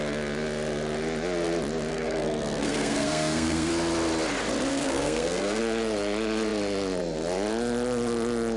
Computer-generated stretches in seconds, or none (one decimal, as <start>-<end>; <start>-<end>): 1.9-3.7; 4.7-5.6

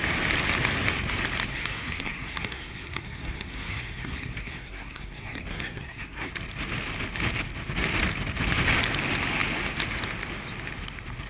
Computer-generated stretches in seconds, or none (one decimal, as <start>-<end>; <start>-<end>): 1.5-6.3

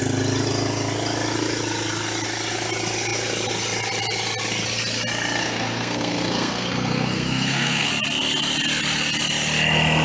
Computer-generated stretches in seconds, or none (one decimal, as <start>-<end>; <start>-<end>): 5.4-7.9

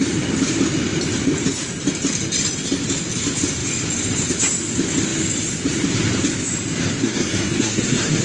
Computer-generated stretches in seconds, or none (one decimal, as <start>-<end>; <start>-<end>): 7.0-8.2

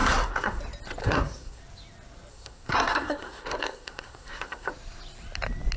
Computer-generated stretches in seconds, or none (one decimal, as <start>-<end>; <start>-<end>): 0.0-0.6; 1.0-1.6; 2.3-4.7

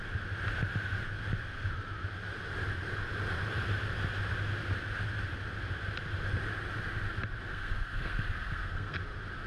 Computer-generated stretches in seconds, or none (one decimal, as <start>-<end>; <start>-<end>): 7.5-9.0

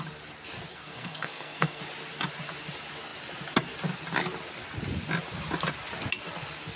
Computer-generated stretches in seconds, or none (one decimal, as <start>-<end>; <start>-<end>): 0.7-1.8